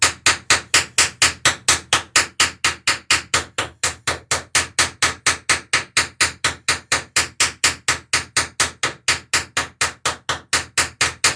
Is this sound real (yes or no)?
yes